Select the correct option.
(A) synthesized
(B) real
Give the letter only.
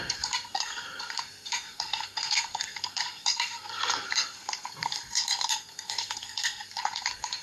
A